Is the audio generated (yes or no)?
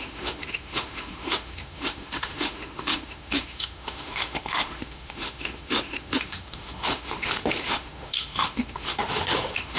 yes